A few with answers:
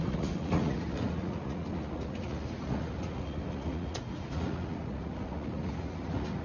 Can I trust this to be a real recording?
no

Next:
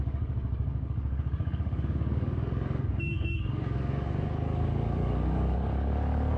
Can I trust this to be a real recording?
no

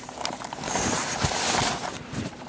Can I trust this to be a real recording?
no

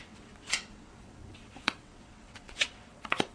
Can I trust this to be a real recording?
no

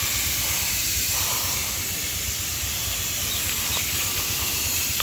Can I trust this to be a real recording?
yes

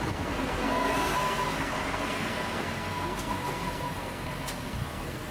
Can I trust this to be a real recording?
no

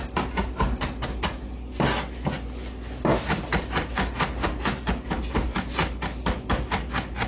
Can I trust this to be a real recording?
yes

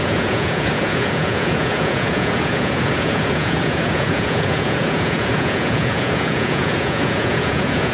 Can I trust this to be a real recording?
no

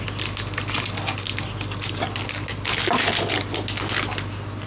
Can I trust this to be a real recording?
yes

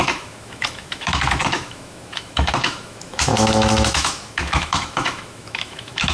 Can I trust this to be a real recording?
no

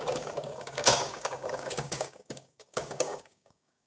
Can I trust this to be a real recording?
no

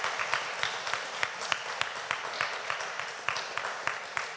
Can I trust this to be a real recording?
yes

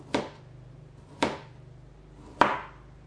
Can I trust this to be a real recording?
yes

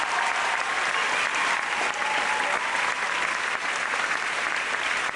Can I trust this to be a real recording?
yes